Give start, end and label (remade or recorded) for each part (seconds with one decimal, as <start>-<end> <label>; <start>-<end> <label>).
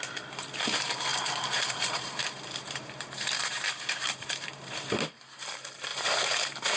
0.0-1.1 recorded; 1.1-5.0 remade; 5.0-5.9 recorded; 5.9-6.8 remade